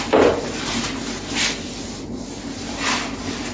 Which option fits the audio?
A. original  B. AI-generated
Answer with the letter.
A